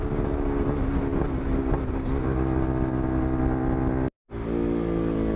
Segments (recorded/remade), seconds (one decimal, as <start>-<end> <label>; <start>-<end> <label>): 0.0-5.4 recorded